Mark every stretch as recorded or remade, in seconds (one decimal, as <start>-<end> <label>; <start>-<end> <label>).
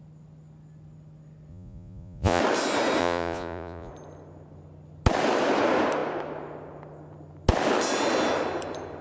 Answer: 0.0-1.5 recorded; 1.5-2.4 remade; 2.4-3.0 recorded; 3.0-3.9 remade; 3.9-9.0 recorded